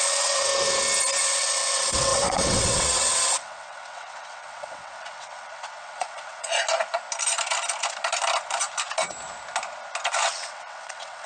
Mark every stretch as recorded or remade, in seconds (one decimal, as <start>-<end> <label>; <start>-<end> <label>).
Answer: 0.0-0.5 remade; 0.5-1.2 recorded; 1.2-6.5 remade; 6.5-10.3 recorded; 10.3-11.3 remade